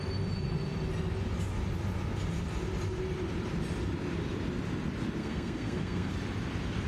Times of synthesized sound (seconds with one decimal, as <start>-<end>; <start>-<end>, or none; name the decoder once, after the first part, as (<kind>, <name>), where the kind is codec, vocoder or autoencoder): 5.2-6.1 (codec, SNAC)